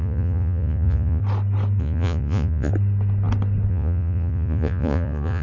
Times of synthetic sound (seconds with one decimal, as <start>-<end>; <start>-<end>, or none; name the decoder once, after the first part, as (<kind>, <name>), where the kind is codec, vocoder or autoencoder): 0.0-1.2 (vocoder, Vocos); 1.8-2.7; 3.7-5.4